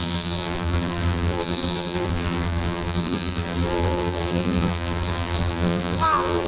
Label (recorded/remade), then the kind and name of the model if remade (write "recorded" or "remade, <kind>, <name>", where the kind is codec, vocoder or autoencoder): remade, vocoder, BigVGAN v2